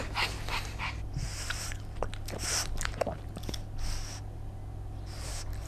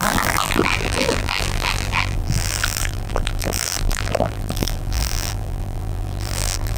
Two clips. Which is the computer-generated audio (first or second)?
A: second